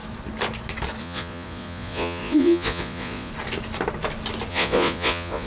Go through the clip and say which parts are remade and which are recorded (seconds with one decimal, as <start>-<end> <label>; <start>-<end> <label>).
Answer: 0.0-1.0 recorded; 1.0-3.3 remade; 3.3-4.5 recorded; 4.5-5.5 remade